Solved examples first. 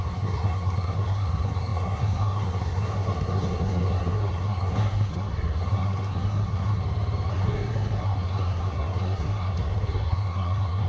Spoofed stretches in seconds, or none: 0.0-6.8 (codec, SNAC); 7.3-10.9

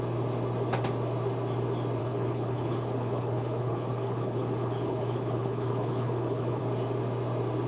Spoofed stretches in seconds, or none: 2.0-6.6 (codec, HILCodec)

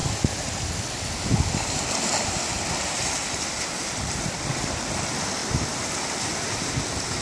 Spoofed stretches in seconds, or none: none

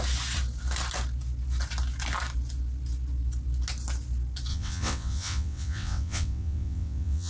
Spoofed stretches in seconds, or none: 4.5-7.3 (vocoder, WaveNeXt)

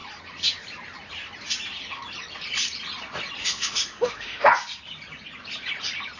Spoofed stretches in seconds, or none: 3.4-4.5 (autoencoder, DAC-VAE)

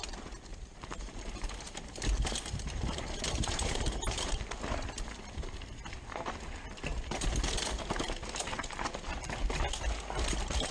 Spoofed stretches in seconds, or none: 0.5-4.4 (vocoder, BigVGAN v2)